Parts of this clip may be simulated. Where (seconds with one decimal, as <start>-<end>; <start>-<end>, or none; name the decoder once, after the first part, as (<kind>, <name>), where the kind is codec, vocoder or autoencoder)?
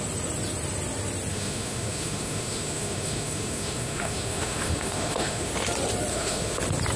1.3-5.5 (autoencoder, DAC-VAE); 6.1-6.6